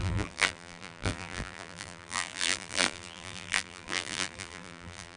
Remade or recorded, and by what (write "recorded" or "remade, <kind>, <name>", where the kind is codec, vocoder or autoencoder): remade, vocoder, BigVGAN v2